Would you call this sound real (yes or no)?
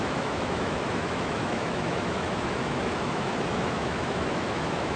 no